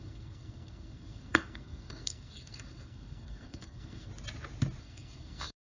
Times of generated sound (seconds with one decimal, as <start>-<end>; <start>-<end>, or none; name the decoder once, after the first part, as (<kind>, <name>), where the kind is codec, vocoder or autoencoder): 0.0-4.1 (codec, SNAC); 4.8-5.6

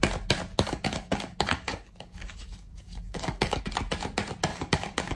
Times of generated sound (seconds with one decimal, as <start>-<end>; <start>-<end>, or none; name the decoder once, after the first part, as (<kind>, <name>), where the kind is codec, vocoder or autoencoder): 0.5-3.6 (codec, DAC); 4.5-5.2

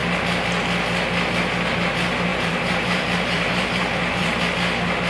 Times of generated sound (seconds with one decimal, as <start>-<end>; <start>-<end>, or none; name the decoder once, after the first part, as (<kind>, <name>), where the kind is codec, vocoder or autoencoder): 2.3-4.4 (vocoder, BigVGAN v2)

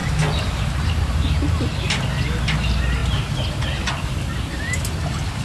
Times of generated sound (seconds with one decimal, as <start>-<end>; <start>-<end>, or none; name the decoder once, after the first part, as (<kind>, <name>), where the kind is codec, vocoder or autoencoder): none

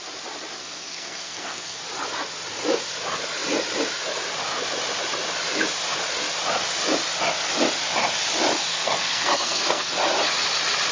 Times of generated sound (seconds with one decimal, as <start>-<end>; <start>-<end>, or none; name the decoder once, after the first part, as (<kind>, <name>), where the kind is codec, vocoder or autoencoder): 0.6-1.8 (codec, SNAC); 8.7-9.9

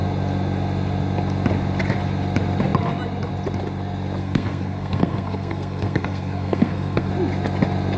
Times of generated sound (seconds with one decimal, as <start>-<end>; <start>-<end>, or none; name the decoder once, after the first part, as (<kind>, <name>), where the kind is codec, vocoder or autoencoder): 4.2-7.1 (codec, SNAC)

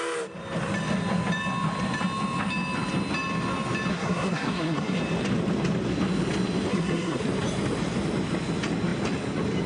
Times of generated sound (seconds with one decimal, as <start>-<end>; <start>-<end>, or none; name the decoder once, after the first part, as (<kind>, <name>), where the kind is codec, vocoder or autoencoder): 3.9-5.0 (codec, SNAC); 6.7-7.2